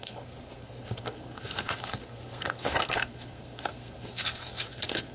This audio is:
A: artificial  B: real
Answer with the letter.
A